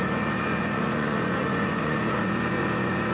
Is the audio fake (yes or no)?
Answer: yes